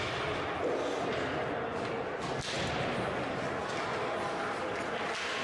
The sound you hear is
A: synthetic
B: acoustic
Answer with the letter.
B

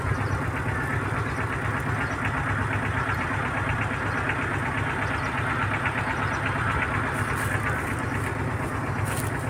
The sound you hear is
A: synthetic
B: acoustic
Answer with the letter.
B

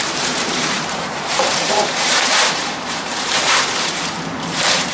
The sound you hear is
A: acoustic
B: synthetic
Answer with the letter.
B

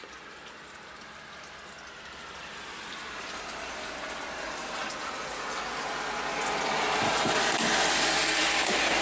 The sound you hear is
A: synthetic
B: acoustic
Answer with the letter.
A